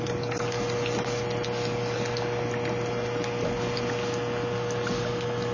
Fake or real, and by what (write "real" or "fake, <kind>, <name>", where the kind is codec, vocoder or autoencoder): real